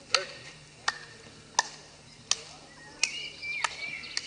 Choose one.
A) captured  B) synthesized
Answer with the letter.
A